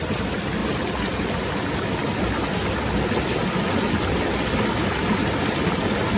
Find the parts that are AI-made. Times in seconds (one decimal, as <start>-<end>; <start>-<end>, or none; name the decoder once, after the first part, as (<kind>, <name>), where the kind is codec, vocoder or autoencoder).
none